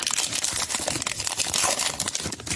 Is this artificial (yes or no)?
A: yes